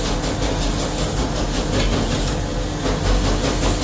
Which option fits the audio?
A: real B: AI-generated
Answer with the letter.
A